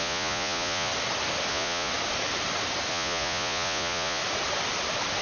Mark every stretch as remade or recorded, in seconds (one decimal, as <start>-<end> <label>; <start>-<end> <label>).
0.0-0.9 remade; 0.9-1.5 recorded; 1.5-1.9 remade; 1.9-2.9 recorded; 2.9-4.2 remade; 4.2-5.2 recorded